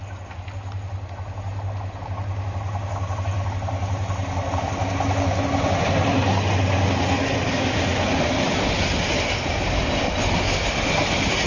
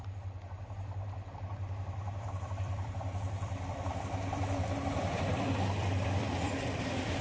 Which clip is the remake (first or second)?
second